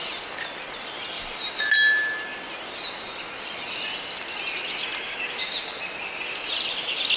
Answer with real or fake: real